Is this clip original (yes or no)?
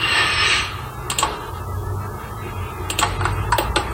yes